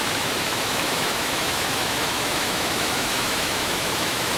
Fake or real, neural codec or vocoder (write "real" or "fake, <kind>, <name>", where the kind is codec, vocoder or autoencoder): fake, autoencoder, DAC-VAE